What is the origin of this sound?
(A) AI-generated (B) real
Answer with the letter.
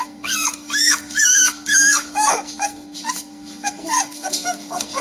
A